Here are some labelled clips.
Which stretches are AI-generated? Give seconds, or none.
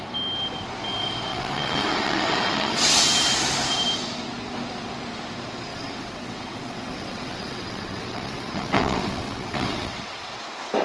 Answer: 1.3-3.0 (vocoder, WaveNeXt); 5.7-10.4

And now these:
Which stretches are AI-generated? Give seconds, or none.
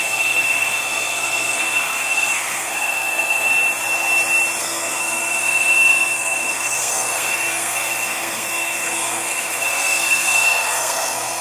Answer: 0.0-3.5 (codec, SNAC); 4.6-11.4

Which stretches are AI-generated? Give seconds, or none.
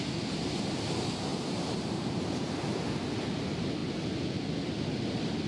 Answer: 1.3-2.2 (vocoder, BigVGAN v2)